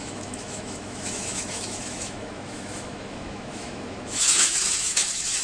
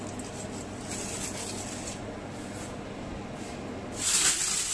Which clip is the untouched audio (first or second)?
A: second